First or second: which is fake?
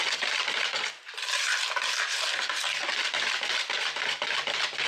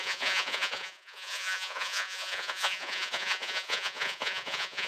second